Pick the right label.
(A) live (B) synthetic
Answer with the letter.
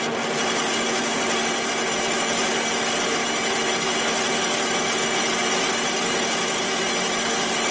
A